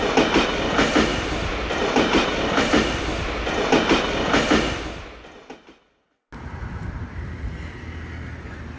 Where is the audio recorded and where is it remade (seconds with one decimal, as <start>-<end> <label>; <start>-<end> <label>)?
0.0-1.1 recorded; 1.1-2.6 remade; 2.6-8.8 recorded